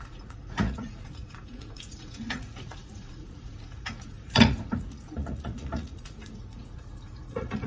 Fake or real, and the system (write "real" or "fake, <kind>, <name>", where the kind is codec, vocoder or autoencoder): fake, vocoder, Vocos